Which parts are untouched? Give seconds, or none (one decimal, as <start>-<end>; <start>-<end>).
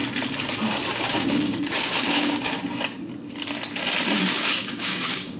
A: 0.0-0.9; 2.6-4.2